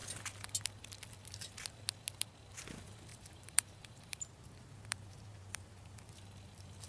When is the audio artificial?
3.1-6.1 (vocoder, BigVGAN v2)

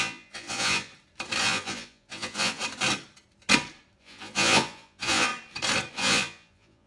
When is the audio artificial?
0.0-0.9 (vocoder, Vocos); 1.4-2.6; 4.0-5.3; 5.9-6.9

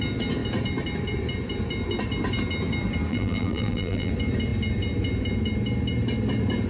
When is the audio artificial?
3.1-4.1 (vocoder, BigVGAN v2)

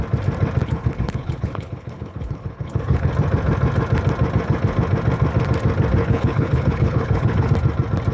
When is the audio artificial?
0.6-3.1 (codec, HILCodec); 6.0-7.5

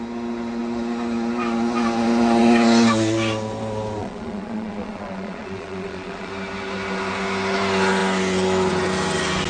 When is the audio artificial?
4.0-6.3 (vocoder, Vocos)

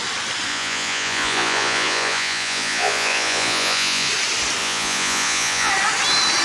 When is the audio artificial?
0.5-4.1 (vocoder, Vocos); 4.6-5.7

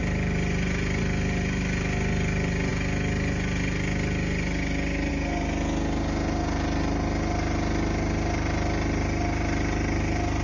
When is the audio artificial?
none